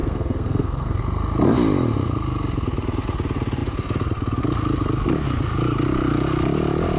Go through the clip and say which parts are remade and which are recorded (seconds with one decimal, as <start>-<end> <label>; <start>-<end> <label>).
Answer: 0.0-1.0 remade; 1.0-7.0 recorded